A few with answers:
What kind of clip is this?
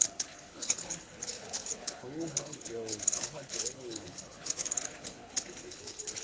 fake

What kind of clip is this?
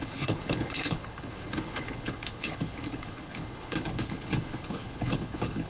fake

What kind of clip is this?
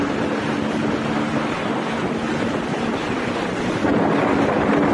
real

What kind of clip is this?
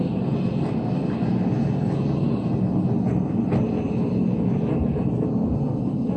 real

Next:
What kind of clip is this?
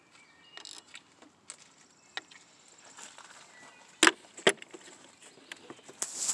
real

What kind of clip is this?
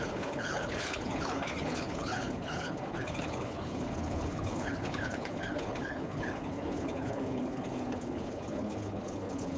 fake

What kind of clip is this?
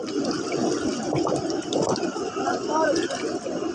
real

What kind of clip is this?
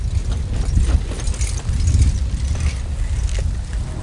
real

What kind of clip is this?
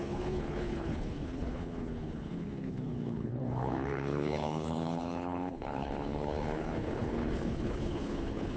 fake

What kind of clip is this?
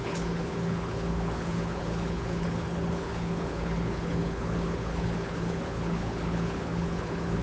fake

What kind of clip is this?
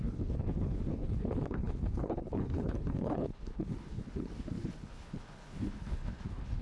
fake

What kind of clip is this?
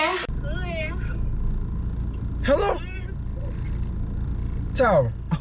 real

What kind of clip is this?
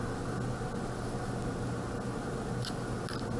real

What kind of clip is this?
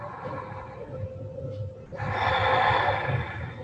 real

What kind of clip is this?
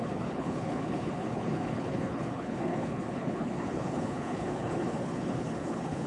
fake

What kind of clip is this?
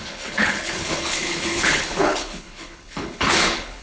fake